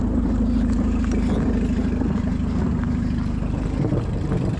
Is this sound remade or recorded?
recorded